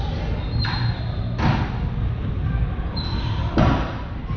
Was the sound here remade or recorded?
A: recorded